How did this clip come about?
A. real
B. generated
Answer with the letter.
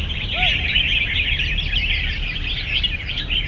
A